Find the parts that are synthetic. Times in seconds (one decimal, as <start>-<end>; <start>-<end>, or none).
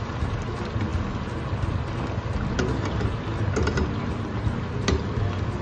none